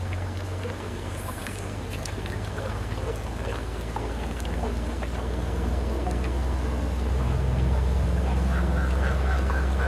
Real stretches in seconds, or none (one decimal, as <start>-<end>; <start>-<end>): none